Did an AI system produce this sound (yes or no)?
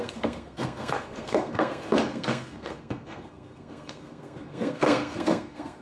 yes